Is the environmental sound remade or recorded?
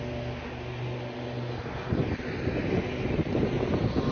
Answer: recorded